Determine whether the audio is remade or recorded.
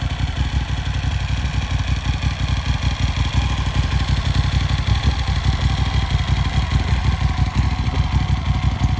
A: recorded